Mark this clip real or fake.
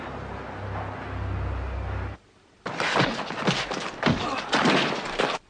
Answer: real